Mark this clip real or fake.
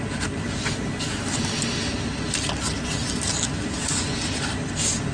real